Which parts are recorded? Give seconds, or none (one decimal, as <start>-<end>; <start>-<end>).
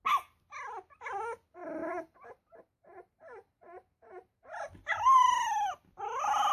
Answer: 0.0-6.5